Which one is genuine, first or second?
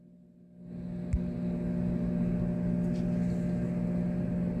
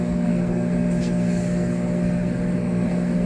first